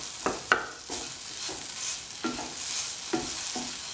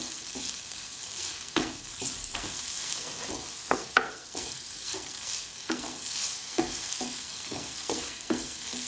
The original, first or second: first